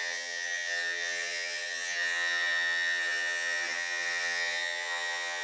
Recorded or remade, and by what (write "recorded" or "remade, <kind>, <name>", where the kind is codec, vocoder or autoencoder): remade, vocoder, HiFi-GAN